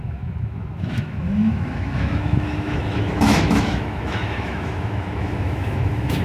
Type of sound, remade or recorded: remade